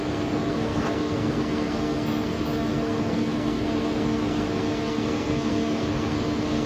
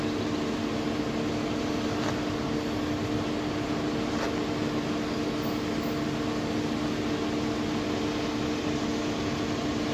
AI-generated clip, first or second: first